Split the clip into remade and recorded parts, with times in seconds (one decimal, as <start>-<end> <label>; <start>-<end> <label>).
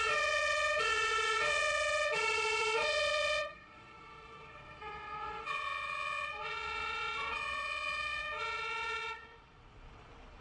0.0-10.4 remade